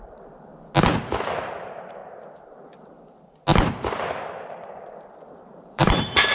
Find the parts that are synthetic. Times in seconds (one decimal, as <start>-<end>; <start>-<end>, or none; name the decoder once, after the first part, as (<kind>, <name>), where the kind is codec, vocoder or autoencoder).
0.0-0.5 (vocoder, BigVGAN v2); 1.4-2.0; 5.3-6.3